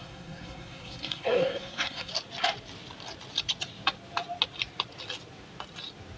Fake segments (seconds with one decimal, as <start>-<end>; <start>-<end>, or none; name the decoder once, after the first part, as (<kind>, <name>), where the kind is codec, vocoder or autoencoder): 0.0-2.1 (codec, SNAC)